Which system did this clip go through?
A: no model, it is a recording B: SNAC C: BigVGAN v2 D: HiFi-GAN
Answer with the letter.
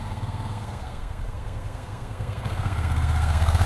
B